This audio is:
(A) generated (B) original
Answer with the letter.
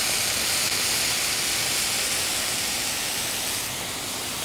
B